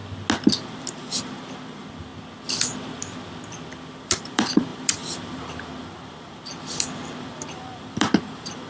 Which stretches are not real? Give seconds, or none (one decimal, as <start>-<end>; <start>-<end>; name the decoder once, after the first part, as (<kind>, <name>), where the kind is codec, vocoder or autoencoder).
0.6-2.1 (vocoder, BigVGAN v2); 4.0-8.7